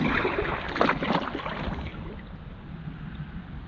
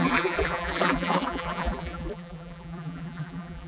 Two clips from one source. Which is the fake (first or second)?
second